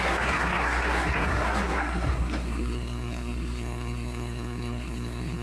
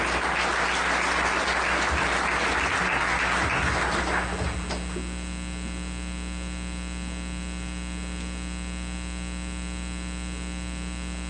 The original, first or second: second